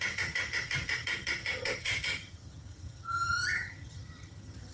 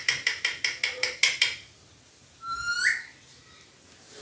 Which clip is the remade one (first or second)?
first